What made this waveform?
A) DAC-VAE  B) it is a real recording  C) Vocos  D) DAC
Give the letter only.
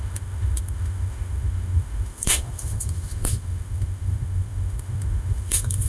A